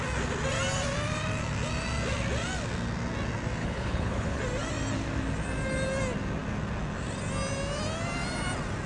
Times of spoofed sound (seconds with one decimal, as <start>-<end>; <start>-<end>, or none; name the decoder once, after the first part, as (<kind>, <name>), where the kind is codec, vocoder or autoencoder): 3.6-4.4 (codec, HILCodec)